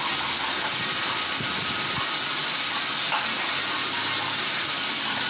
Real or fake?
real